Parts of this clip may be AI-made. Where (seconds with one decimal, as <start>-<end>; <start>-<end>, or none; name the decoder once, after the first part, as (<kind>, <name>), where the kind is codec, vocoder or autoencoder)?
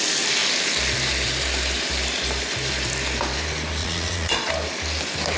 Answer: 3.8-4.5 (vocoder, Vocos)